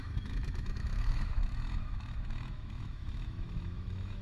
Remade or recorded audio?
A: remade